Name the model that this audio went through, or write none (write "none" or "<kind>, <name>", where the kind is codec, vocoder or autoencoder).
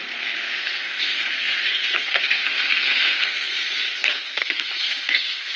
codec, SNAC